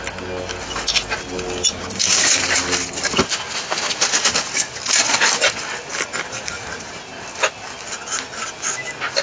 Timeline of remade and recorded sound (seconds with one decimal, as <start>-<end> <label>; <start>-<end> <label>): 0.0-1.7 recorded; 1.7-2.4 remade; 2.4-9.2 recorded